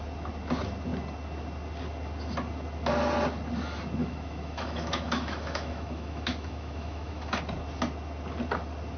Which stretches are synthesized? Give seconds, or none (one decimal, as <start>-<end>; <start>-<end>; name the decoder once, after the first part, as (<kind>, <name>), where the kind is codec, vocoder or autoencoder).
4.0-7.4 (autoencoder, DAC-VAE)